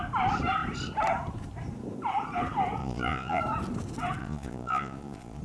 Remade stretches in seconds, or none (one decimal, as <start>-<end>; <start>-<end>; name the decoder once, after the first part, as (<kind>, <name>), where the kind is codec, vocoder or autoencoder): 2.8-3.4 (vocoder, Vocos); 4.2-5.4